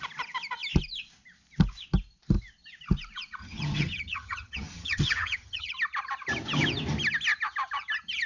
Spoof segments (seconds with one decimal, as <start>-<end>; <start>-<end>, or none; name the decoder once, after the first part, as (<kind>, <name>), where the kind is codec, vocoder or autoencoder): 3.4-5.7 (vocoder, HiFi-GAN)